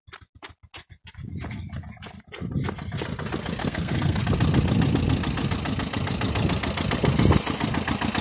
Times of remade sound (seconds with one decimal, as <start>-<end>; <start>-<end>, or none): 3.6-4.2